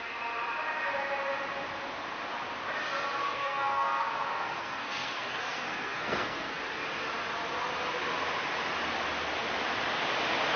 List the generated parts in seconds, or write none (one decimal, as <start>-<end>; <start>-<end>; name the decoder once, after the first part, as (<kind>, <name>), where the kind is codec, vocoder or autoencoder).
3.2-6.6 (codec, SNAC)